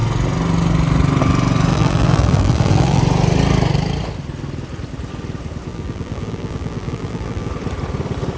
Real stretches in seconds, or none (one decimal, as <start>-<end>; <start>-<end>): 0.0-1.7; 3.0-5.7; 7.5-8.4